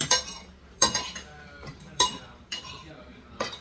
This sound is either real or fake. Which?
fake